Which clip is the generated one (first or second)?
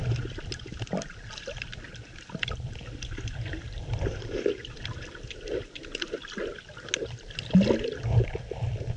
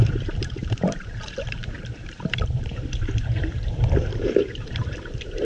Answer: second